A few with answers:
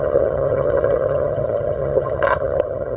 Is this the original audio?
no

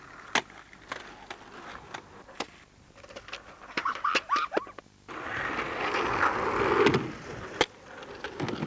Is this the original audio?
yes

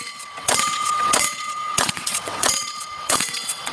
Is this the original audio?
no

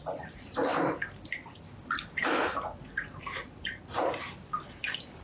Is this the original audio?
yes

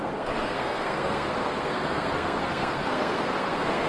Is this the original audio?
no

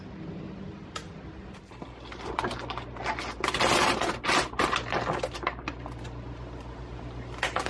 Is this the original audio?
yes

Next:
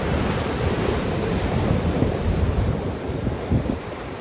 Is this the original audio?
no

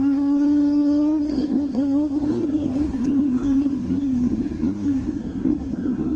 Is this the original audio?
no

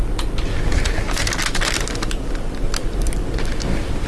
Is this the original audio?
yes